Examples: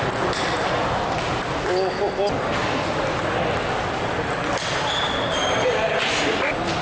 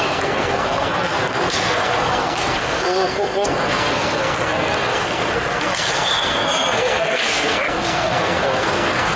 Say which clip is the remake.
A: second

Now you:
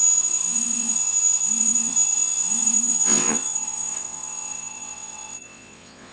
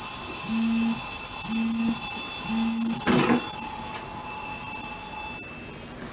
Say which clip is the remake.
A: first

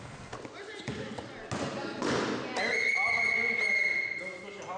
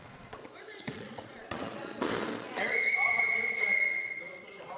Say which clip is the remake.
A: second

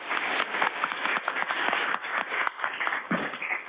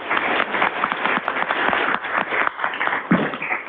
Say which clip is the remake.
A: first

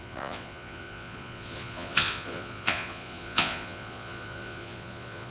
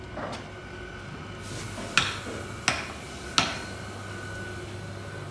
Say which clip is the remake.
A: first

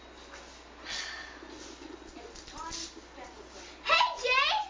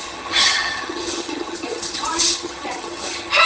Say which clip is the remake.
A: second